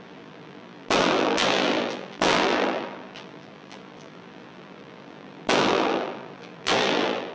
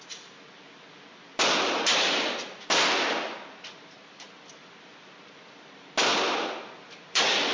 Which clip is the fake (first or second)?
first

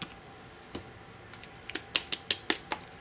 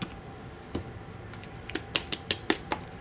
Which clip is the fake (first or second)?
second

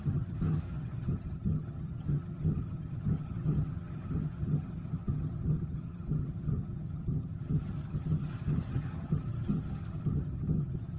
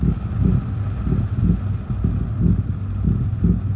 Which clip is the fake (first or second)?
first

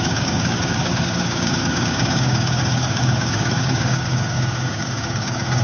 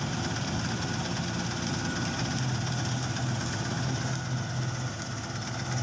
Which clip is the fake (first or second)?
first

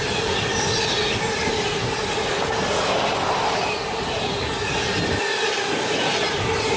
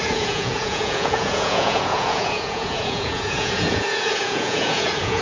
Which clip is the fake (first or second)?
second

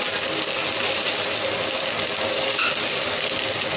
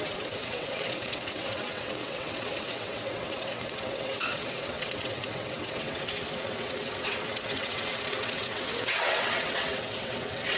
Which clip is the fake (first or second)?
second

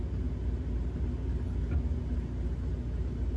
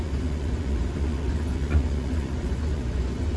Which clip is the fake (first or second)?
second